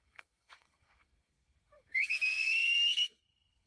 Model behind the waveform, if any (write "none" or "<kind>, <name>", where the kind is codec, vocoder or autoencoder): codec, SNAC